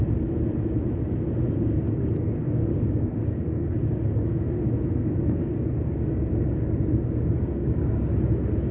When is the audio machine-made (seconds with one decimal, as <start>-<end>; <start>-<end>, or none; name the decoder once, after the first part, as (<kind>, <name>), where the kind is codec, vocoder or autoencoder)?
1.5-8.1 (codec, DAC)

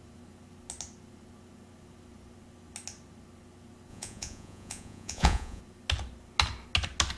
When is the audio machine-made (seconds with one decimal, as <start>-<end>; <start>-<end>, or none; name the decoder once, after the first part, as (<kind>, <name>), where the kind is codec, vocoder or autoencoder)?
3.9-5.6 (vocoder, Vocos)